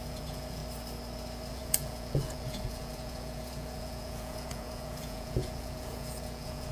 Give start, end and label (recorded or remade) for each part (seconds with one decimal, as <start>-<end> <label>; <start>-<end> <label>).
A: 0.0-0.6 remade; 0.6-1.5 recorded; 1.5-6.7 remade